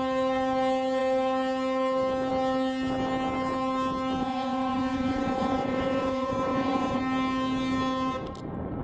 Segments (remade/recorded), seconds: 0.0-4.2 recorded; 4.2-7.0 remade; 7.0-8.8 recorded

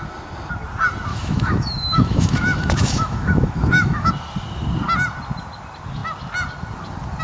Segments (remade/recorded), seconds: 0.0-1.1 recorded; 1.1-4.1 remade; 4.1-7.2 recorded

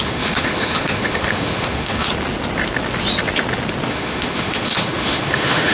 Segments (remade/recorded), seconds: 0.0-2.1 remade; 2.1-3.9 recorded; 3.9-5.7 remade

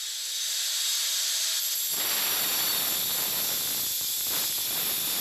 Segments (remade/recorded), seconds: 0.0-5.2 recorded

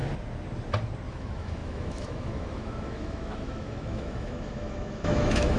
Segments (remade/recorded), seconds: 0.0-1.1 recorded; 1.1-5.6 remade

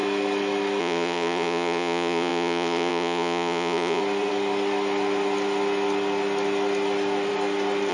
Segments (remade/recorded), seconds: 0.0-0.8 recorded; 0.8-4.0 remade; 4.0-7.9 recorded

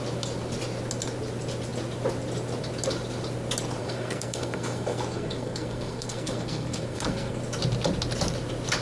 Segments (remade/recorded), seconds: 0.0-3.8 recorded; 3.8-7.4 remade; 7.4-8.8 recorded

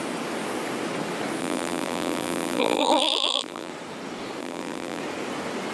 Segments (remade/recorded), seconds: 0.0-1.4 recorded; 1.4-3.7 remade; 3.7-4.4 recorded; 4.4-5.0 remade; 5.0-5.7 recorded